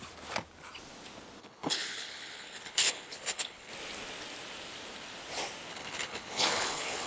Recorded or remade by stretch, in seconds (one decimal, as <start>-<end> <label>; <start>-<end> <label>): 0.0-1.4 recorded; 1.4-3.7 remade; 3.7-5.7 recorded; 5.7-7.1 remade